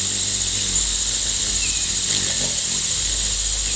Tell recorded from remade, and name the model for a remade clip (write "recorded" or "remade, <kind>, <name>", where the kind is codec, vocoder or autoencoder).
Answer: recorded